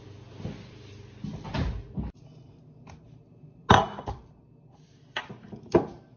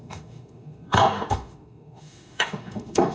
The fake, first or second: second